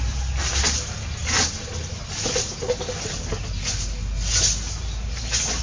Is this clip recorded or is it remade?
recorded